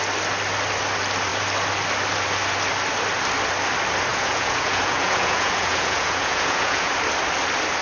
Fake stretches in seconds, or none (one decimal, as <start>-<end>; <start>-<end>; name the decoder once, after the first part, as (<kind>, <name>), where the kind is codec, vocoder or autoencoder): 4.1-6.9 (vocoder, Vocos)